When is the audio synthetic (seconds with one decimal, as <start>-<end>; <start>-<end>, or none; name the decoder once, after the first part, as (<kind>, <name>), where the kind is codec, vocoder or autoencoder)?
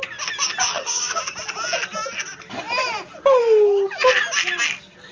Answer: 0.7-1.2 (vocoder, HiFi-GAN)